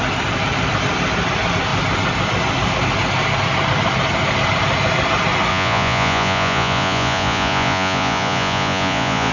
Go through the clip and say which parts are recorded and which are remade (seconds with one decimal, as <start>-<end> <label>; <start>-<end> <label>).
0.0-5.5 recorded; 5.5-9.3 remade

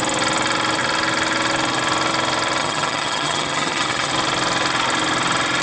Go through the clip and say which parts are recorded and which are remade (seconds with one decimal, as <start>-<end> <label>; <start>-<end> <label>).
0.0-2.6 recorded; 2.6-4.1 remade; 4.1-5.6 recorded

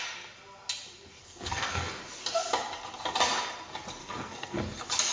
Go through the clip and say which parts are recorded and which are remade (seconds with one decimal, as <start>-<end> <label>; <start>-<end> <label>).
0.0-1.2 recorded; 1.2-1.9 remade; 1.9-4.0 recorded; 4.0-4.6 remade; 4.6-5.1 recorded

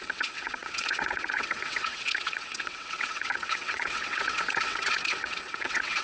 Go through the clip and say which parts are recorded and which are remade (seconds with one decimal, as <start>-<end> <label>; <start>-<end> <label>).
0.0-6.0 remade

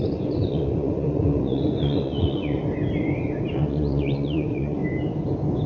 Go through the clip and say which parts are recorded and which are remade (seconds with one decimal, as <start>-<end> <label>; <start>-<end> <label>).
0.0-2.6 remade; 2.6-3.5 recorded; 3.5-4.8 remade; 4.8-5.7 recorded